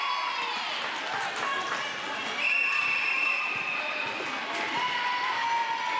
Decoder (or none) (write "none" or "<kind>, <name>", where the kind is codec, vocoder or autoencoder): none